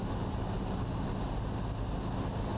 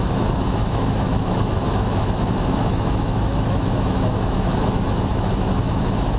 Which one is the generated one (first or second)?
second